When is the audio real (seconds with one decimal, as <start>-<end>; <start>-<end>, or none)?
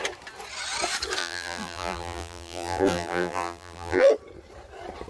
0.0-1.2; 4.1-5.1